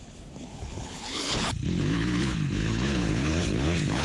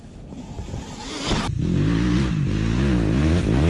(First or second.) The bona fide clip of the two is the second